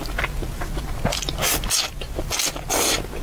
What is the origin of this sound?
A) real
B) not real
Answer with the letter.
A